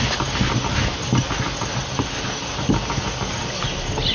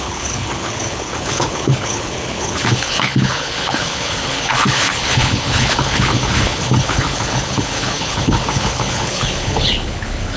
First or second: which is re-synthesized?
second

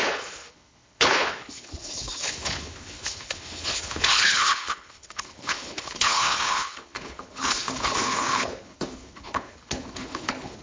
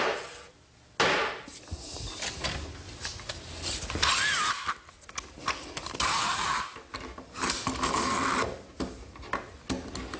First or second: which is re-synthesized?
first